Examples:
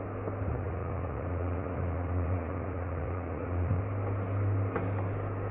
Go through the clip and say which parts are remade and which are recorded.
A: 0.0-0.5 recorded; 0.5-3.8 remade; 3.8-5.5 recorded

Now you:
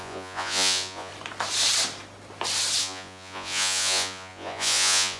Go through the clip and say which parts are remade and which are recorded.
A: 0.0-1.1 remade; 1.1-2.8 recorded; 2.8-5.2 remade

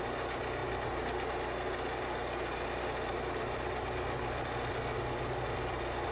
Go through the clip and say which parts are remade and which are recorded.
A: 0.0-6.1 recorded